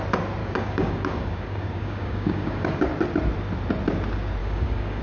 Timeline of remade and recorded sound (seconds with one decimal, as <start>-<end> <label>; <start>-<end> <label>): 0.0-0.4 recorded; 0.4-2.8 remade; 2.8-4.4 recorded; 4.4-5.0 remade